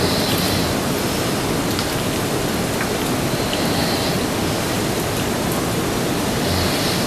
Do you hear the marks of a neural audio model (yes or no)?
no